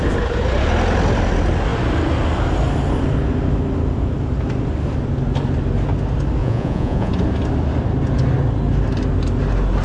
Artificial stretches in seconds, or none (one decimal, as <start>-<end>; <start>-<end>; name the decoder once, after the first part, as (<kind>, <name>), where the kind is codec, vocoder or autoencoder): 6.4-7.1 (vocoder, Vocos)